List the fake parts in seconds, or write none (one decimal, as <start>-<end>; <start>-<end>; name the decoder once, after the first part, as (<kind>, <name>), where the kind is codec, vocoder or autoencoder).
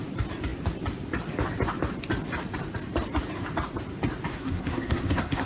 4.3-5.5 (codec, SNAC)